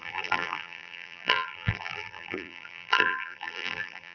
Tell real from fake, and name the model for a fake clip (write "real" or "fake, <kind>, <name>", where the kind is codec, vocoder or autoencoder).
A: fake, vocoder, BigVGAN v2